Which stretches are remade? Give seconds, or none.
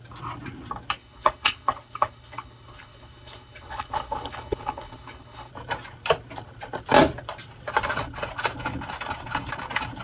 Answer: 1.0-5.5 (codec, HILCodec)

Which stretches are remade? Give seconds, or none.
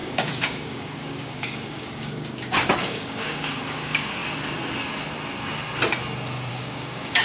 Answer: 0.0-4.2 (codec, DAC); 6.5-7.2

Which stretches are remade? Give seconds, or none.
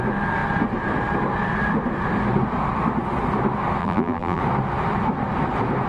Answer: 3.8-4.4 (vocoder, BigVGAN v2)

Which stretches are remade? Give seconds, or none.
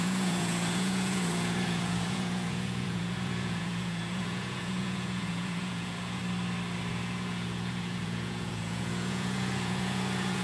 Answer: 0.0-6.2 (vocoder, Vocos); 6.9-10.4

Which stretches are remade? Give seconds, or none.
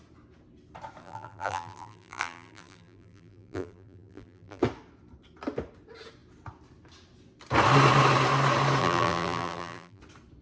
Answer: 1.0-4.6 (vocoder, BigVGAN v2); 8.8-10.0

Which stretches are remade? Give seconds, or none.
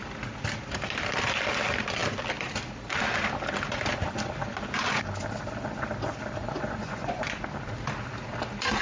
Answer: 6.4-7.2 (vocoder, Vocos)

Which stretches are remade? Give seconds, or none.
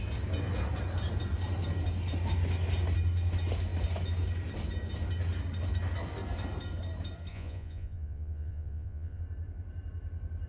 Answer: 7.3-9.2 (vocoder, Vocos)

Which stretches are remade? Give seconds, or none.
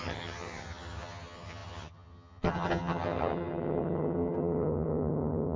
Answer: 0.0-5.6 (vocoder, HiFi-GAN)